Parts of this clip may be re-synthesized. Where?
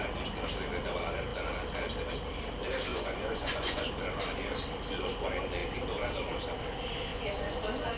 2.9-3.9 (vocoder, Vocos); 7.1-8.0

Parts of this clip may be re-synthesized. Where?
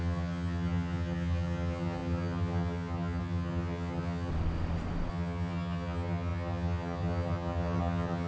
0.0-4.3 (vocoder, HiFi-GAN); 5.1-8.3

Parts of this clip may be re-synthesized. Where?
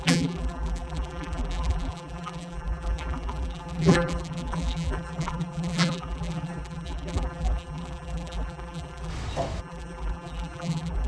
0.0-9.1 (vocoder, BigVGAN v2); 9.6-11.1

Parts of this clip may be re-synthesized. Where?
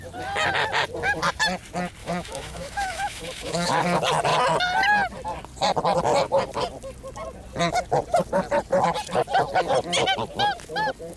2.0-3.8 (autoencoder, DAC-VAE)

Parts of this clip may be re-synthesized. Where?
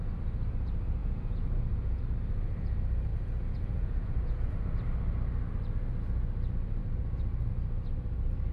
1.0-2.0 (vocoder, Vocos); 3.1-4.5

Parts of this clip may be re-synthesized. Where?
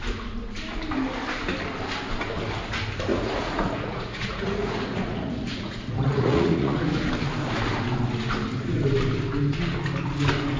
3.1-7.1 (vocoder, Vocos)